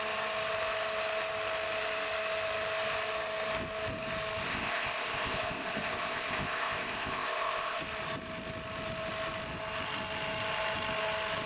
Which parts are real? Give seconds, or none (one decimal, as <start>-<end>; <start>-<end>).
0.0-4.5; 7.8-11.5